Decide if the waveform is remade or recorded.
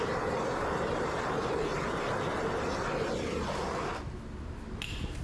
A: recorded